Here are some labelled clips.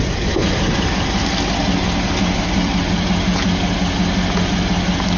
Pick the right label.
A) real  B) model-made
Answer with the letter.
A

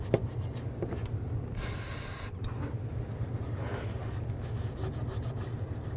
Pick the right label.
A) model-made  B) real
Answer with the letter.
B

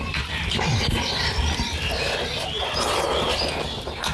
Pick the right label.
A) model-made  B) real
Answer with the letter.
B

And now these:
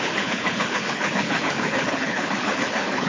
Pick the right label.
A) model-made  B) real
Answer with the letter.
A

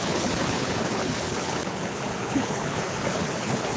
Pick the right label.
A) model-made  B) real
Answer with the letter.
A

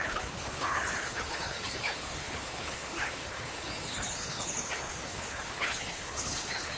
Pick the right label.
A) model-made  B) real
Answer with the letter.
A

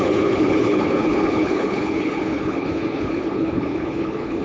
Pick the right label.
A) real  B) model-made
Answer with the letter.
B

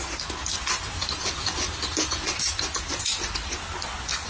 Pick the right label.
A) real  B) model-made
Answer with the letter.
A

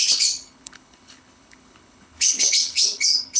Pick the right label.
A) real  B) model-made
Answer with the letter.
B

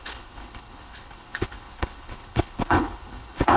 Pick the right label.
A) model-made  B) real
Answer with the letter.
A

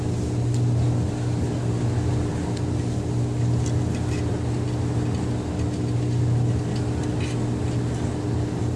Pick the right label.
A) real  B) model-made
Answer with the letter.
A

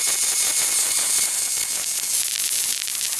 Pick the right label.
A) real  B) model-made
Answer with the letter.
A